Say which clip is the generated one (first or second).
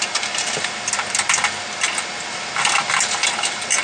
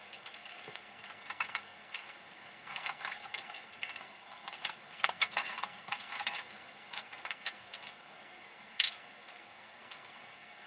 second